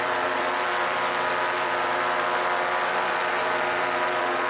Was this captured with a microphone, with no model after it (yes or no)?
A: no